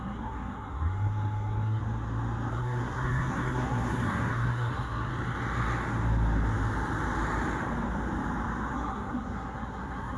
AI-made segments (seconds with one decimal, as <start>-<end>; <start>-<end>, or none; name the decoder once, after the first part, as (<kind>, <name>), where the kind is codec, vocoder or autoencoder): 0.0-1.8 (codec, SNAC); 2.5-5.1; 8.7-10.2